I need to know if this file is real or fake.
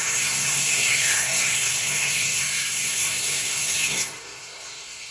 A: fake